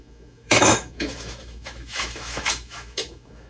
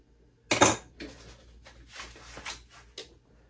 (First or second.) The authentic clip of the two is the second